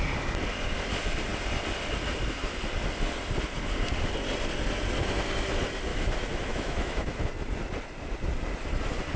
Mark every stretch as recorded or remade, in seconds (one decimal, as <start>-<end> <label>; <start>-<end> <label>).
0.0-5.9 recorded; 5.9-7.3 remade; 7.3-9.2 recorded